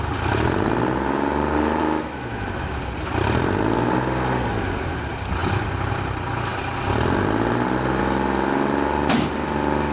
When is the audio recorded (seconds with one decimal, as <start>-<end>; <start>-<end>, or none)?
0.0-1.8; 2.8-9.9